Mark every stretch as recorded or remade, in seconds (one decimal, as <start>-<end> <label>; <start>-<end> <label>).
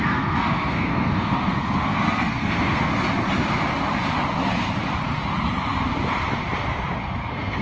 0.0-2.9 remade; 2.9-7.0 recorded; 7.0-7.6 remade